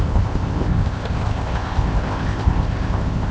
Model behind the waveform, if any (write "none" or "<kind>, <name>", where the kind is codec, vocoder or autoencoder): codec, ZipCodec